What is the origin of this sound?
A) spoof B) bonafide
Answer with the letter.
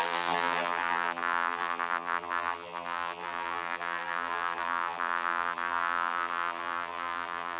A